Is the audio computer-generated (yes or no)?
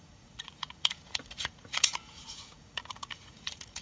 yes